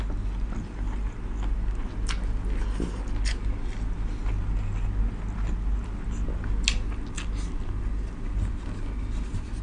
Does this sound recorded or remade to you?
recorded